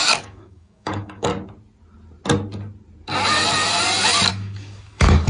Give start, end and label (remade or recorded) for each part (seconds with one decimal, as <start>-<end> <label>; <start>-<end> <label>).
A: 0.0-1.3 remade; 1.3-4.3 recorded; 4.3-5.3 remade